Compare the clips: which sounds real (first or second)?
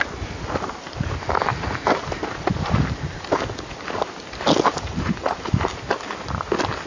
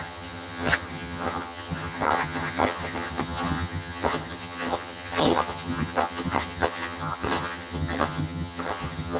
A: first